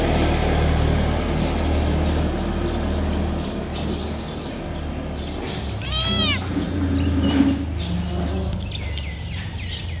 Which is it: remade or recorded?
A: recorded